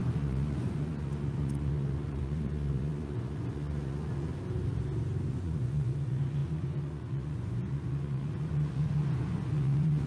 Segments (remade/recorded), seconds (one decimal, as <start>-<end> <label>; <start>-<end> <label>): 0.0-4.3 remade; 4.3-5.3 recorded; 5.3-10.1 remade